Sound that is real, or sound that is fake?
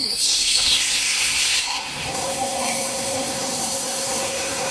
fake